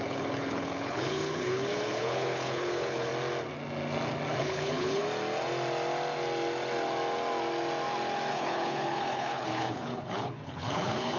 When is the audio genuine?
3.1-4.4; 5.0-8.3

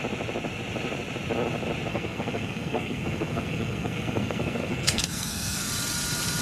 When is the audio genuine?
0.0-1.9; 5.7-6.4

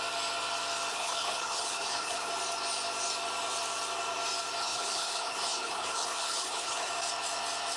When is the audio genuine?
0.0-0.9; 2.3-4.6; 6.9-7.8

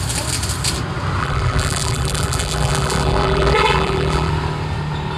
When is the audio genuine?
0.0-1.2; 4.3-5.2

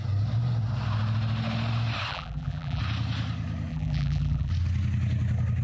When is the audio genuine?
0.0-2.1; 2.8-3.7; 4.5-5.6

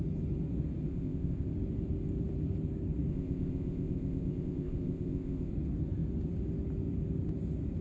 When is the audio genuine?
0.0-0.9; 1.5-3.1; 5.5-7.8